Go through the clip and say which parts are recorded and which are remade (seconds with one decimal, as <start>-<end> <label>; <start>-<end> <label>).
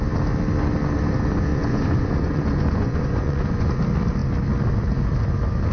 0.0-1.5 recorded; 1.5-3.8 remade; 3.8-5.7 recorded